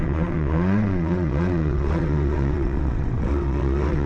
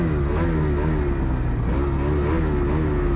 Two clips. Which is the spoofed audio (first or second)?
first